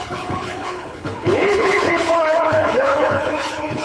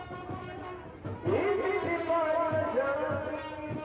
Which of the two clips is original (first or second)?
second